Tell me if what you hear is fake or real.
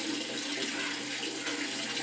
real